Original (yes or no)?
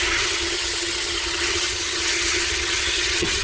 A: no